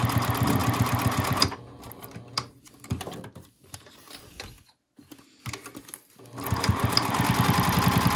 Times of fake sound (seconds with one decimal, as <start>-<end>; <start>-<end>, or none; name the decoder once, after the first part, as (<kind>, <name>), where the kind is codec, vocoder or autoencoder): none